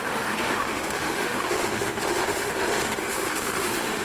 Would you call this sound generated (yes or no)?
yes